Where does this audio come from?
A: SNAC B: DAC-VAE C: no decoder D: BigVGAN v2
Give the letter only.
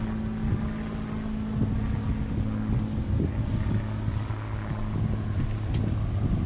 C